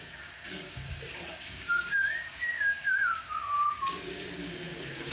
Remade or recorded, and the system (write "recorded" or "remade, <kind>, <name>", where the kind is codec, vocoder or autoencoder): remade, codec, DAC